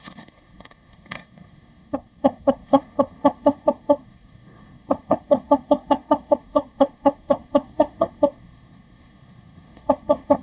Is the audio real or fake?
fake